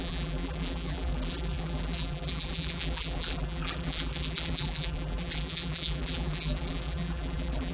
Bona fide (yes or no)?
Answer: no